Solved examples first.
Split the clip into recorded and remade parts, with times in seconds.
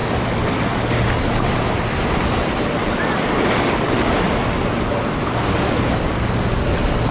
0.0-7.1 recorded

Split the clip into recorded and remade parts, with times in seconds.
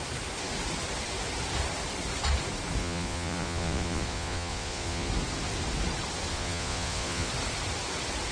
0.0-2.8 recorded; 2.8-5.1 remade; 5.1-6.3 recorded; 6.3-7.3 remade; 7.3-8.3 recorded